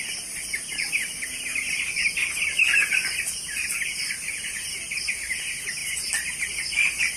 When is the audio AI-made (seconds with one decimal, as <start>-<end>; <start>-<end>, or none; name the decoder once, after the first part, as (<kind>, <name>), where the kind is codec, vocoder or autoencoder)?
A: none